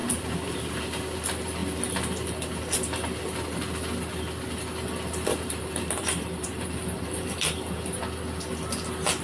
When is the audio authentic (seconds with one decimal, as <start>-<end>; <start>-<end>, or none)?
1.0-5.3; 8.0-9.2